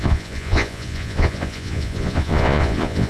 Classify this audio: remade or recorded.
remade